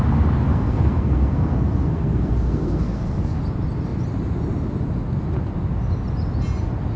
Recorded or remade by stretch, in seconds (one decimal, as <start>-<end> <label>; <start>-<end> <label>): 0.0-0.5 recorded; 0.5-3.4 remade; 3.4-7.0 recorded